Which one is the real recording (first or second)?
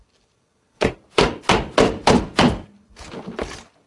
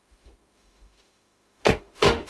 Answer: first